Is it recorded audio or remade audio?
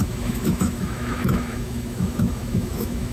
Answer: remade